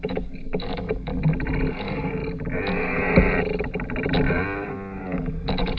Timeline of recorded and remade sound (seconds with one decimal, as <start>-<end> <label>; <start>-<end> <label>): 0.0-1.1 remade; 1.1-1.7 recorded; 1.7-2.2 remade; 2.2-5.0 recorded; 5.0-5.8 remade